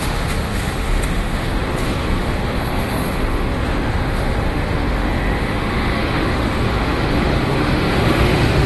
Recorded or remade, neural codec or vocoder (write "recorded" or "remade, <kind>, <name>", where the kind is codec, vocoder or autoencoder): remade, autoencoder, DAC-VAE